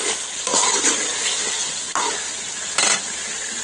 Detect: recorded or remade recorded